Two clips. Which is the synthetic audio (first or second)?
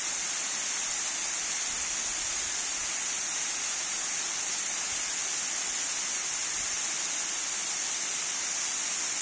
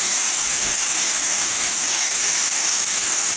second